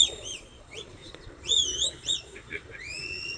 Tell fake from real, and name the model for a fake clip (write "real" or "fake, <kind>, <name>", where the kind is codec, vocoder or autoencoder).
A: fake, vocoder, Vocos